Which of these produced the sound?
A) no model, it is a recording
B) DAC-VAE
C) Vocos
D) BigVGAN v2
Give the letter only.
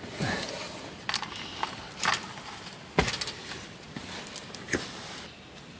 A